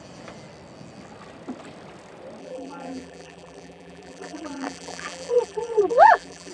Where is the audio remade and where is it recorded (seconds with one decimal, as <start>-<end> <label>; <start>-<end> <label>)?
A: 0.0-2.4 recorded; 2.4-6.5 remade